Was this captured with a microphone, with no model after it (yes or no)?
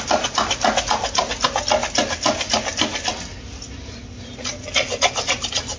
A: yes